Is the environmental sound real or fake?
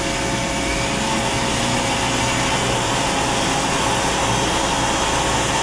real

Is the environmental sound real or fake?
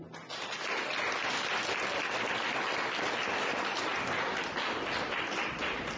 real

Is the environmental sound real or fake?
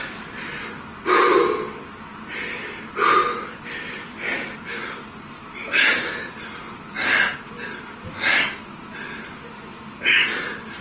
real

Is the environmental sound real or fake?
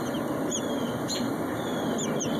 fake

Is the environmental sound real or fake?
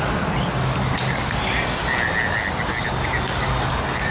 real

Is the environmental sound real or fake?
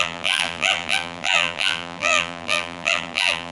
fake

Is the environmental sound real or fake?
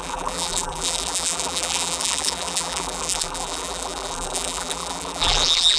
fake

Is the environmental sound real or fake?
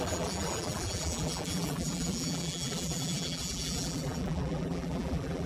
fake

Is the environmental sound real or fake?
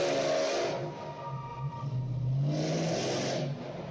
real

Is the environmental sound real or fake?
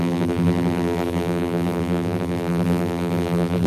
fake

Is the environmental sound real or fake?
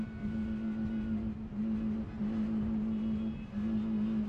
real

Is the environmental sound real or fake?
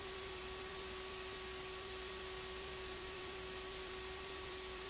fake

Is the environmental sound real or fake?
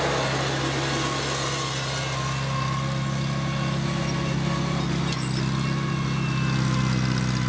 real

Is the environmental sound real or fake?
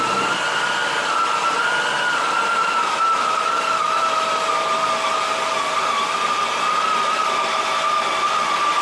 fake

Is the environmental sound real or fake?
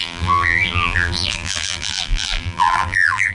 fake